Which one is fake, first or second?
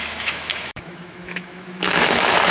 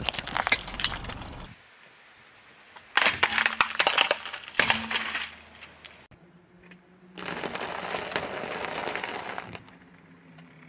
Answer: first